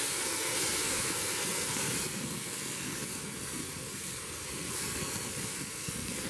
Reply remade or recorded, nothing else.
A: remade